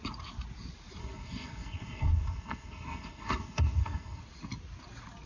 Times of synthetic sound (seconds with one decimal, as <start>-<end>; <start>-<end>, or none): 1.0-4.2